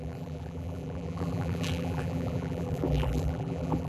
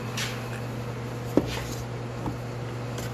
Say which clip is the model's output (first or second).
first